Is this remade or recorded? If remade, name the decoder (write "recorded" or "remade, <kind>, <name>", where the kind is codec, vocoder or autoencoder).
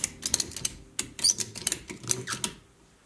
recorded